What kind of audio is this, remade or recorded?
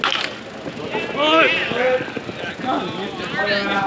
recorded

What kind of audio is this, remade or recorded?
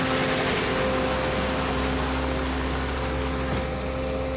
recorded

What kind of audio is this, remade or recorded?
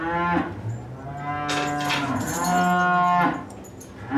recorded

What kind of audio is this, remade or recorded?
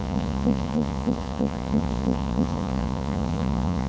remade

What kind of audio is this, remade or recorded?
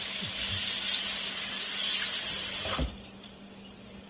recorded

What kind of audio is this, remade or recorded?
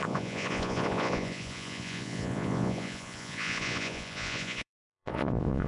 remade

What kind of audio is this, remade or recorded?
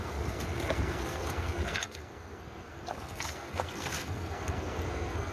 remade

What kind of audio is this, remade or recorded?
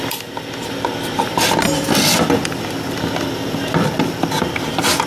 remade